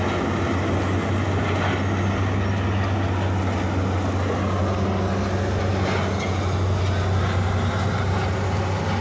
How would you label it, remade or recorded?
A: recorded